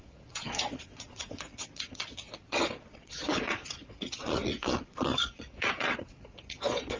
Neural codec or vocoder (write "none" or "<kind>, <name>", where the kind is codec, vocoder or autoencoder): vocoder, Vocos